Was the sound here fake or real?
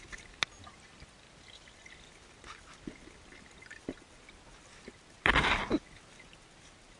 real